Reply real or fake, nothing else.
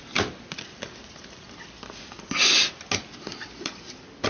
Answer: real